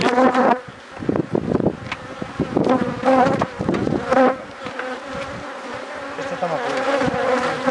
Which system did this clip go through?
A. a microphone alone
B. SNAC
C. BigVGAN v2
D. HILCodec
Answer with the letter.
A